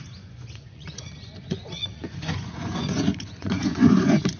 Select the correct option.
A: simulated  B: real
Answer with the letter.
A